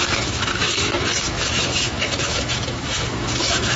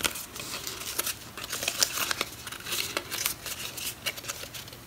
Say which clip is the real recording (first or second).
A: second